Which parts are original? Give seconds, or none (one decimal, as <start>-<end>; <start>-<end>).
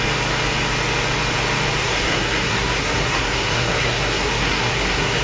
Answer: 0.0-1.8